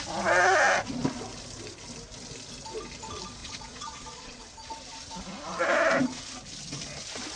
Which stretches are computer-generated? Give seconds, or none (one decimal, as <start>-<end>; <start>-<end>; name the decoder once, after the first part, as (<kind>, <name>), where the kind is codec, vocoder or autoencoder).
3.4-4.4 (vocoder, Vocos)